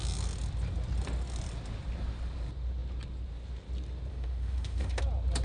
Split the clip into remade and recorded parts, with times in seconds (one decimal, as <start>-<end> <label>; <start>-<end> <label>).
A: 0.0-4.1 recorded; 4.1-5.0 remade; 5.0-5.4 recorded